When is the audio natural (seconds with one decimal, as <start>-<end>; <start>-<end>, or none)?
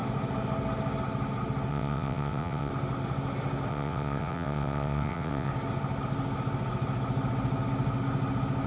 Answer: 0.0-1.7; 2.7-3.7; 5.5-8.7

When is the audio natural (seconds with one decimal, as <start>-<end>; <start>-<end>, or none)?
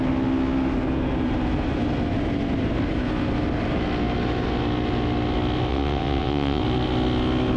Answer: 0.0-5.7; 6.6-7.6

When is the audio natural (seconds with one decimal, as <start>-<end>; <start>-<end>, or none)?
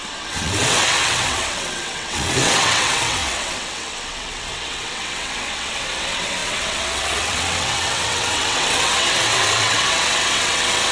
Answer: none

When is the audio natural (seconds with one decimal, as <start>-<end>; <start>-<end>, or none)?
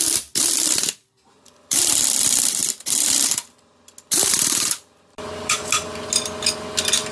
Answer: 0.0-7.1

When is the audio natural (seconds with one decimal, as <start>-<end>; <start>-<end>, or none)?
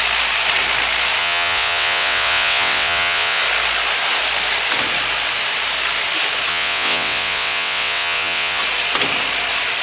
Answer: 0.0-1.2; 3.4-6.5; 8.6-9.8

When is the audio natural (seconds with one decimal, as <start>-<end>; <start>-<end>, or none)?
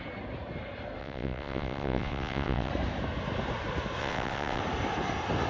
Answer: 0.0-1.0; 2.7-4.0; 4.6-5.5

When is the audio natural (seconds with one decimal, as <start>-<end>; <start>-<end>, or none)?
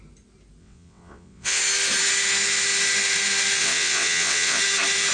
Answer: 0.0-0.6; 1.6-3.6; 4.6-5.1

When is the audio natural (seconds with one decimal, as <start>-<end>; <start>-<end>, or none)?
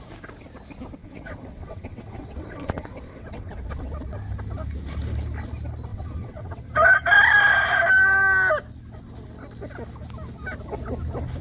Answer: 0.0-1.0; 4.2-5.9; 6.6-11.4